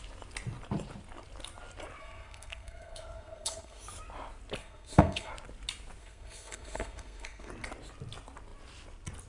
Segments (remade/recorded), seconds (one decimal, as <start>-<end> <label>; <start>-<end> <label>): 0.0-2.0 recorded; 2.0-3.8 remade; 3.8-4.6 recorded; 4.6-5.3 remade; 5.3-6.0 recorded; 6.0-7.5 remade; 7.5-9.3 recorded